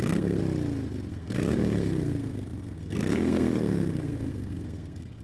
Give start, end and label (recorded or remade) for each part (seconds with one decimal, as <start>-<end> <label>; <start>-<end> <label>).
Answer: 0.0-0.4 remade; 0.4-1.1 recorded; 1.1-5.2 remade